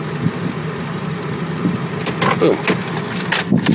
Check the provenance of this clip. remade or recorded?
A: recorded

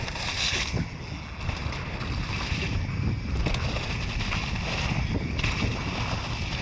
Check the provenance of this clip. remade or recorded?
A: recorded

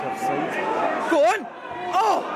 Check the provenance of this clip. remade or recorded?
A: recorded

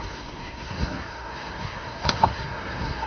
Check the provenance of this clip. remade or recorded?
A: remade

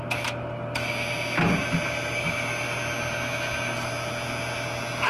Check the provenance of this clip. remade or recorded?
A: recorded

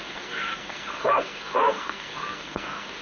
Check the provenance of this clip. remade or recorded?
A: remade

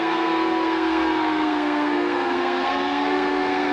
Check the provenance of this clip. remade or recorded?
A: remade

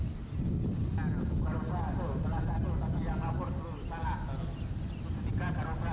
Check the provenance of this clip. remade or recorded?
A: recorded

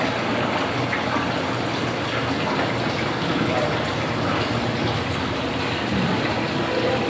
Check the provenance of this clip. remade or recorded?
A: recorded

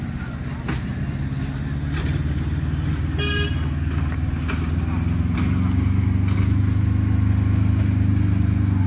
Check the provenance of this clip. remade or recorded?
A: recorded